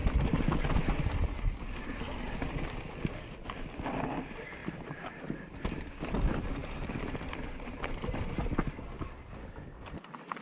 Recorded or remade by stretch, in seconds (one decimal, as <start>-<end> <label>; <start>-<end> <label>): 0.0-4.6 recorded; 4.6-5.2 remade; 5.2-6.6 recorded; 6.6-8.2 remade; 8.2-10.4 recorded